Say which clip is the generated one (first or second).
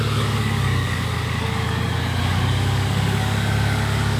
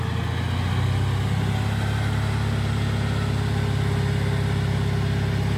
first